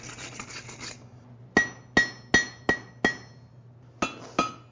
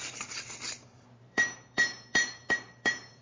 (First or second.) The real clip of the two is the first